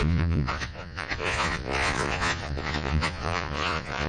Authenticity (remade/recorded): remade